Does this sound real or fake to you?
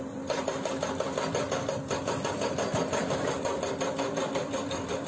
fake